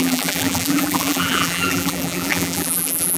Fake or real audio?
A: fake